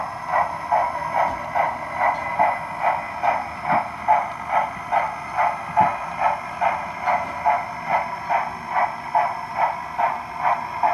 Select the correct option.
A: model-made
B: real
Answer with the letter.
B